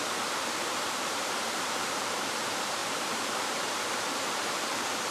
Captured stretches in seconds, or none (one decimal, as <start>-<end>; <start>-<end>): none